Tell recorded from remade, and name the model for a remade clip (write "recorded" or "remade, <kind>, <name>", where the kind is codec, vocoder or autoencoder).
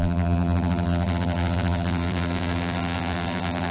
remade, vocoder, BigVGAN v2